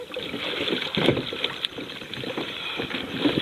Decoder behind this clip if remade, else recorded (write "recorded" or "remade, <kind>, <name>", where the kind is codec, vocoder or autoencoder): recorded